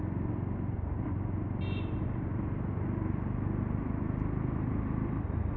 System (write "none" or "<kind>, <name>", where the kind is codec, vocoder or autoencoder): none